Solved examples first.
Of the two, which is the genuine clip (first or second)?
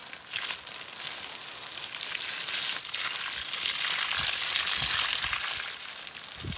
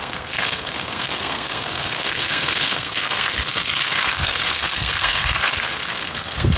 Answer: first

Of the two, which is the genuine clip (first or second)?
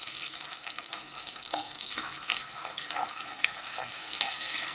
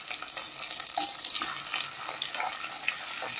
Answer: second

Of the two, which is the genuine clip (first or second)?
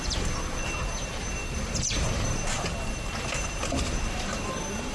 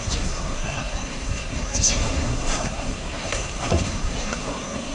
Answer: first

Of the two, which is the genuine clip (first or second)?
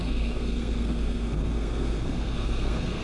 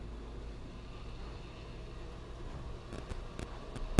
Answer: second